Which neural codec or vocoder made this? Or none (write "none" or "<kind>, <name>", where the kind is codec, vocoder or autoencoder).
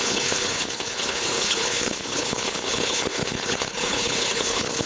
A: codec, HILCodec